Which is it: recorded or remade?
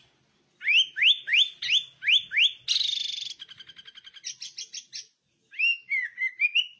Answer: recorded